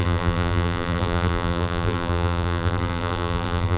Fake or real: fake